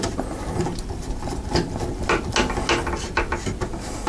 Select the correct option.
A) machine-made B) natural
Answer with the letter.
B